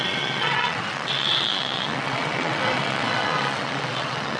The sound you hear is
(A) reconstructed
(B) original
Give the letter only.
A